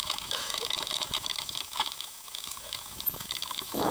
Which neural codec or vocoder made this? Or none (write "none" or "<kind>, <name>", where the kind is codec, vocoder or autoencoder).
autoencoder, DAC-VAE